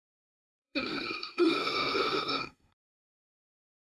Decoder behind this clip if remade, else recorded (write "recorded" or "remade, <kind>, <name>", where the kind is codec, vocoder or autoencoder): remade, codec, SNAC